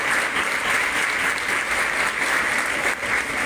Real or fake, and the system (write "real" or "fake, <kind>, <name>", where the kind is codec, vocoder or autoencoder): fake, vocoder, BigVGAN v2